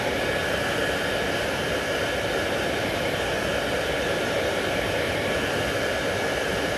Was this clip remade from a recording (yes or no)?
no